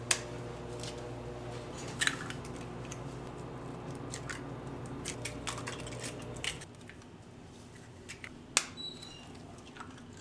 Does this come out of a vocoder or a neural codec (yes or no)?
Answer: no